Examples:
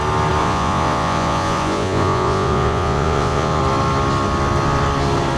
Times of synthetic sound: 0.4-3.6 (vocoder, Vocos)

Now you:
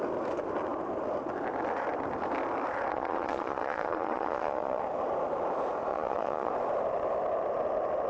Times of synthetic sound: 2.9-4.8 (vocoder, Vocos); 5.9-6.5

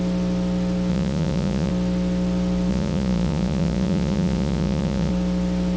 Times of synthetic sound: 0.9-1.7 (vocoder, Vocos); 2.7-5.1

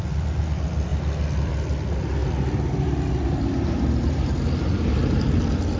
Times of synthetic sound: none

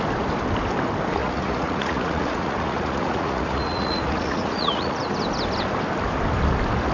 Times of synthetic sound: 1.2-5.0 (vocoder, Vocos)

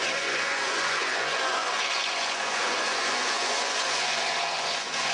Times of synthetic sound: 0.0-5.1 (vocoder, Vocos)